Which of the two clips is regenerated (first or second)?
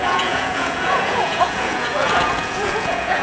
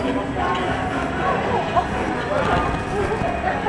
first